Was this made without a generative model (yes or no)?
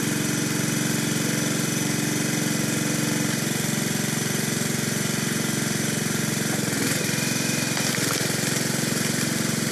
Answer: yes